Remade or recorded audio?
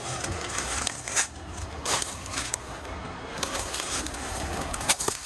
remade